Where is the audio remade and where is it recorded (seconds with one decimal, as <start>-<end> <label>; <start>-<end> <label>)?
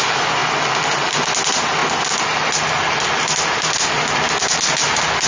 0.0-5.3 recorded